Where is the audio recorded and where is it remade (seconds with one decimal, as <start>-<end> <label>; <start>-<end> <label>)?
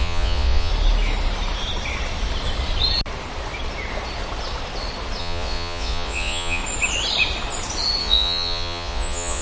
0.0-0.7 remade; 0.7-5.2 recorded; 5.2-6.6 remade; 6.6-8.0 recorded; 8.0-9.4 remade